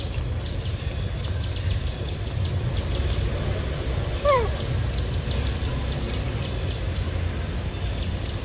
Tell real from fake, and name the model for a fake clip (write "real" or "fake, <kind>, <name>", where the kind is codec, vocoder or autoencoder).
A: fake, vocoder, BigVGAN v2